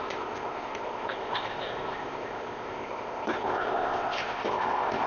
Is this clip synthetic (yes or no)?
yes